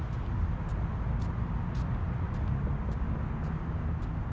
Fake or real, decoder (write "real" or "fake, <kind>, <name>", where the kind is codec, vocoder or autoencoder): real